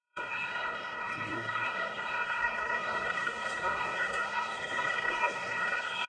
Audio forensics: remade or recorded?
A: remade